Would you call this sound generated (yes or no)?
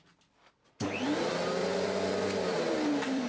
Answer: yes